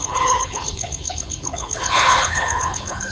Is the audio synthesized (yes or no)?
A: yes